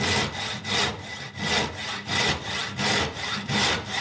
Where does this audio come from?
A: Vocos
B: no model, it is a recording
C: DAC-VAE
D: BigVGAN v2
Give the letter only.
B